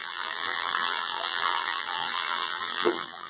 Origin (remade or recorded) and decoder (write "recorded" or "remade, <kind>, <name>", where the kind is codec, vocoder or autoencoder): remade, vocoder, BigVGAN v2